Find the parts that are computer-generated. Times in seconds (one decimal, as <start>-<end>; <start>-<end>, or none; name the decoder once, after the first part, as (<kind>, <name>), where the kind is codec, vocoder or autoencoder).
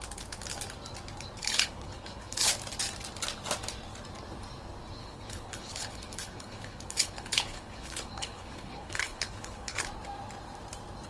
1.4-2.5 (codec, HILCodec); 5.0-9.8